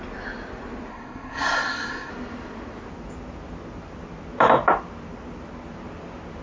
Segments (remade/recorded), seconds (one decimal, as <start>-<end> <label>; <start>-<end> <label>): 0.0-0.9 recorded; 0.9-2.1 remade; 2.1-6.4 recorded